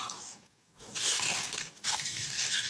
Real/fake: fake